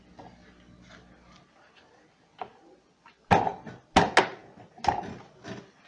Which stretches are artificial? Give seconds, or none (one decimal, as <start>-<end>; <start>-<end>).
none

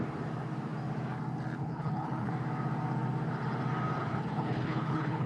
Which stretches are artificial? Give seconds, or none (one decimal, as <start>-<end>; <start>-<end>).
1.6-2.3; 4.0-5.3

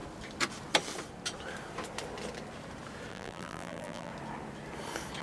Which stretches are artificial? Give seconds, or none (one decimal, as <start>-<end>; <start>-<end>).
3.1-4.1

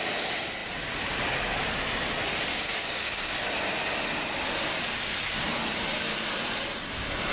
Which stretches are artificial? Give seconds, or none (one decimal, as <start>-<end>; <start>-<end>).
2.5-3.3